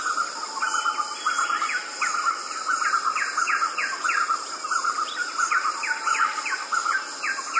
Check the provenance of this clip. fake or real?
real